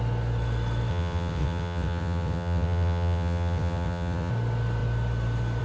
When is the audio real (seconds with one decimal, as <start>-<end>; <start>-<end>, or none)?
0.0-0.9; 4.3-5.6